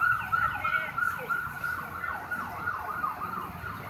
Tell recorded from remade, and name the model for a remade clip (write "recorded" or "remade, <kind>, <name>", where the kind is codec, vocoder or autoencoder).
recorded